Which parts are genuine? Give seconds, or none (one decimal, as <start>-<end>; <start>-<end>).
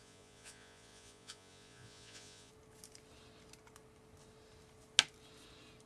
2.5-5.9